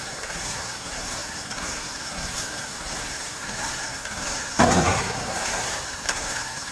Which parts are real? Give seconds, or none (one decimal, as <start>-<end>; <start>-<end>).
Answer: none